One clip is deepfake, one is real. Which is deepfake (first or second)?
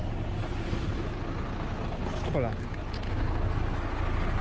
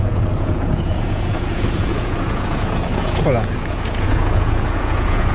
second